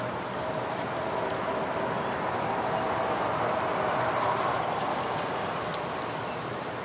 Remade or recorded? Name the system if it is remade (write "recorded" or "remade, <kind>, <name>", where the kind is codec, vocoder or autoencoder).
recorded